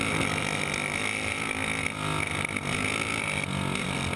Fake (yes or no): no